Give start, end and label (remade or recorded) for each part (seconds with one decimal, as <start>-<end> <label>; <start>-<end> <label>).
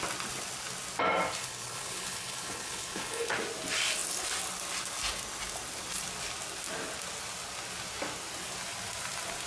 0.0-1.4 recorded; 1.4-3.3 remade; 3.3-9.5 recorded